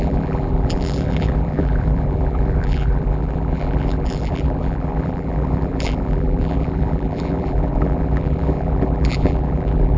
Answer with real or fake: fake